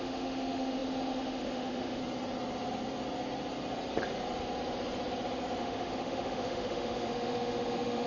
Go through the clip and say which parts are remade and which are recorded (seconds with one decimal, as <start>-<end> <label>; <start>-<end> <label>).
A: 0.0-2.0 remade; 2.0-5.6 recorded; 5.6-8.1 remade